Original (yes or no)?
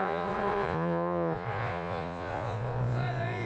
no